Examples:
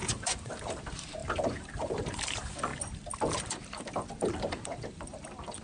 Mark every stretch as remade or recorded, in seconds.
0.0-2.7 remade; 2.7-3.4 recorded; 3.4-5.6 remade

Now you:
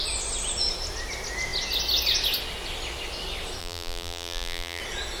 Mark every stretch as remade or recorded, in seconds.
0.0-3.6 recorded; 3.6-4.8 remade; 4.8-5.2 recorded

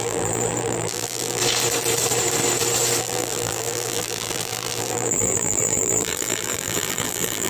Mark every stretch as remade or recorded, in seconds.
0.0-1.4 remade; 1.4-3.0 recorded; 3.0-7.5 remade

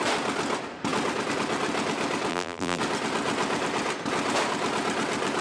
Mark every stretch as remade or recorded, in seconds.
0.0-2.3 recorded; 2.3-2.8 remade; 2.8-5.4 recorded

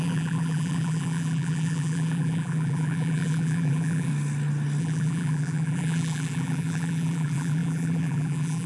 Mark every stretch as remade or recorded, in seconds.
0.0-4.1 remade; 4.1-4.8 recorded; 4.8-8.7 remade

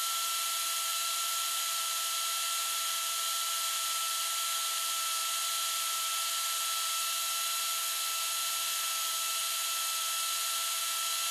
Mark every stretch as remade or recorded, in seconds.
0.0-0.9 recorded; 0.9-1.8 remade; 1.8-11.3 recorded

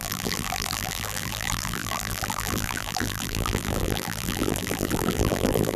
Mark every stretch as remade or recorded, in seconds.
0.0-5.8 remade

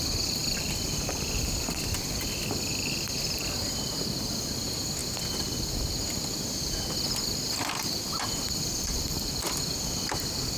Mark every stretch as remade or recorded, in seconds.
0.0-10.6 recorded